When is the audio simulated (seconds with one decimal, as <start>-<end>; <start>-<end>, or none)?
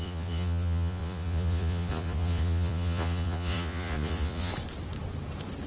0.0-4.5